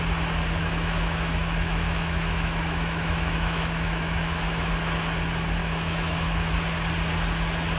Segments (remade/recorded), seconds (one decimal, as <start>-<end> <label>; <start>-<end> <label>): 0.0-0.6 recorded; 0.6-4.7 remade; 4.7-5.6 recorded; 5.6-6.5 remade; 6.5-7.8 recorded

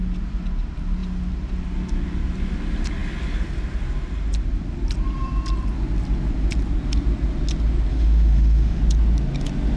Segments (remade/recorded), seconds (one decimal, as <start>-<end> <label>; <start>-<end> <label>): 0.0-7.9 recorded; 7.9-8.8 remade; 8.8-9.8 recorded

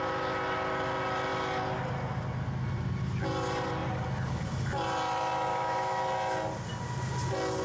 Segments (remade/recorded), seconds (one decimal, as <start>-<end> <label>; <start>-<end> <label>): 0.0-5.5 recorded; 5.5-6.0 remade; 6.0-7.6 recorded